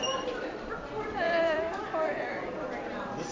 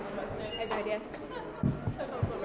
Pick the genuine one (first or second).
second